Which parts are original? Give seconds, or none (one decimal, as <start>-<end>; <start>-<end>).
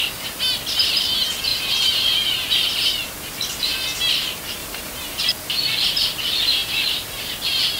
0.0-1.5; 3.6-4.6; 5.2-6.6; 7.2-7.8